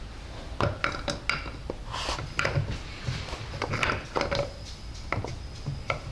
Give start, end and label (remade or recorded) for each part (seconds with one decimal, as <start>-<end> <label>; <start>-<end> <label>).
0.0-1.6 recorded; 1.6-5.3 remade; 5.3-6.1 recorded